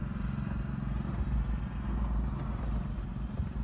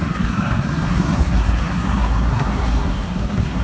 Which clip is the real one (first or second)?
first